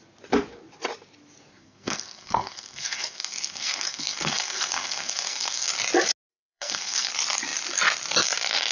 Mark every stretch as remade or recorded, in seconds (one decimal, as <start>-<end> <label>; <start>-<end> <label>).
0.0-1.5 recorded; 1.5-5.7 remade; 5.7-6.3 recorded; 6.3-7.1 remade; 7.1-8.7 recorded